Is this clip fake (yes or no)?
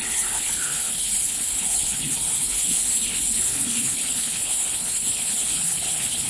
yes